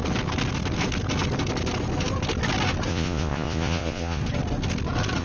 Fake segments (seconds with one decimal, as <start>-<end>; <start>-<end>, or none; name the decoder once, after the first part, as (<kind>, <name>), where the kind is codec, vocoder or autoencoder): 2.9-4.2 (vocoder, Vocos)